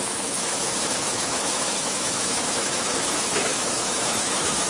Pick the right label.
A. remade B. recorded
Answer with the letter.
A